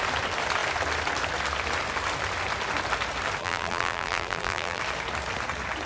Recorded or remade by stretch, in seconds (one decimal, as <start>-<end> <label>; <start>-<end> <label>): 0.0-3.4 recorded; 3.4-4.8 remade; 4.8-5.9 recorded